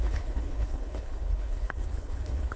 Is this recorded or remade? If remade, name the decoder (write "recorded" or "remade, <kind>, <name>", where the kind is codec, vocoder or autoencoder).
remade, codec, HILCodec